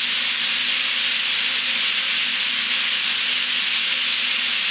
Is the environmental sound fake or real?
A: real